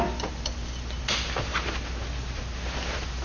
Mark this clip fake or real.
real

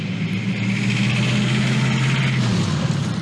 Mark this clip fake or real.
real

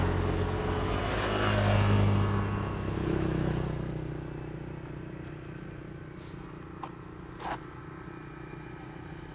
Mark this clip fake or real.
real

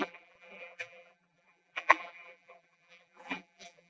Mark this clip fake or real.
fake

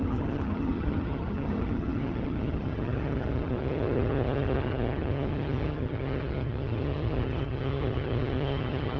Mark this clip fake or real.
fake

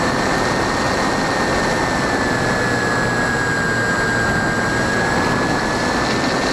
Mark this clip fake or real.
real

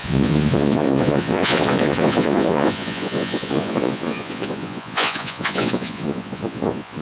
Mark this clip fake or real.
fake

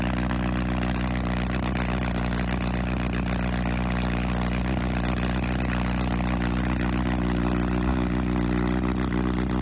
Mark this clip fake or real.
real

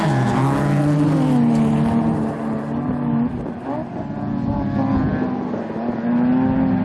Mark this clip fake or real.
real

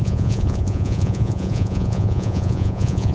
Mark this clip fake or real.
fake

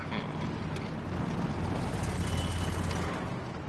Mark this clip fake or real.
real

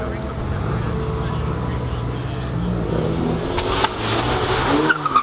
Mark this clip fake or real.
real